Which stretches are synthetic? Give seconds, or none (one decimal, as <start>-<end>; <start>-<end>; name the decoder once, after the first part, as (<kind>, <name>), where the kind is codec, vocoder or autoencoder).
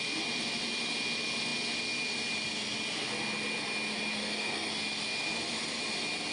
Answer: 4.2-4.7 (codec, SNAC)